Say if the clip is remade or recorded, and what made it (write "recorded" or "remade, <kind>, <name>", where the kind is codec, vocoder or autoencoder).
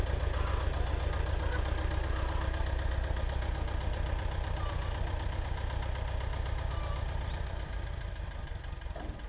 recorded